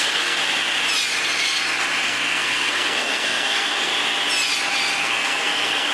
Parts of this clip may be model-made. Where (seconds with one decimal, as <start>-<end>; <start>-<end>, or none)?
0.0-0.4; 2.0-3.9; 5.0-5.9